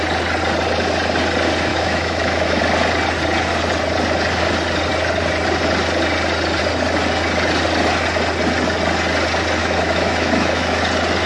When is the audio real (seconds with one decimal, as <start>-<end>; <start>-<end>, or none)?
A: 0.0-1.7; 2.6-9.6; 10.8-11.3